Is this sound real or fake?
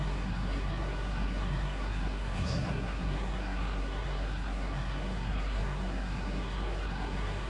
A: fake